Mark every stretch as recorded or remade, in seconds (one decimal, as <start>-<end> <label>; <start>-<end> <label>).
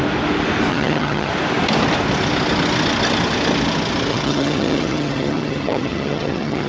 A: 0.0-0.7 recorded; 0.7-1.3 remade; 1.3-4.1 recorded; 4.1-6.7 remade